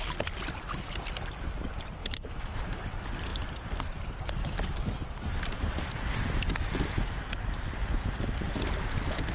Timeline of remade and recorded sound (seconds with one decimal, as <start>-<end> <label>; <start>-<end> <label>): 0.0-2.0 recorded; 2.0-2.7 remade; 2.7-9.3 recorded